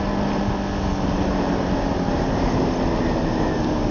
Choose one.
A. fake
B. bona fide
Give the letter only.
B